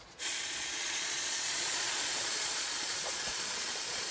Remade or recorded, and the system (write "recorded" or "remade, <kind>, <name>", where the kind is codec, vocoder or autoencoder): remade, vocoder, Vocos